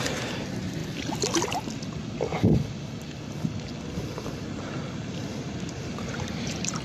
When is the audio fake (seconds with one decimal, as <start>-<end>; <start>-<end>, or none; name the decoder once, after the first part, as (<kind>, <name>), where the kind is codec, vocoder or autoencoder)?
0.0-0.8 (vocoder, BigVGAN v2); 4.9-6.8